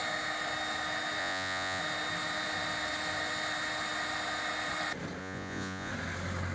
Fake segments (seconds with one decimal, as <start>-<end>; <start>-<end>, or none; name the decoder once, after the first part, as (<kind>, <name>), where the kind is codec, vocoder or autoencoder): 1.2-1.8 (vocoder, Vocos); 5.2-5.9